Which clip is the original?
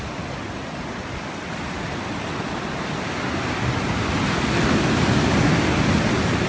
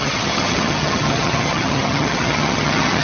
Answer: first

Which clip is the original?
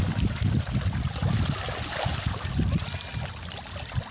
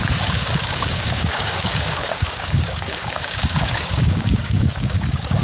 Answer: first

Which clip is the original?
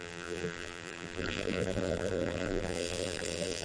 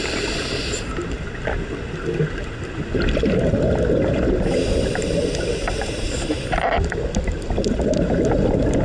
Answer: second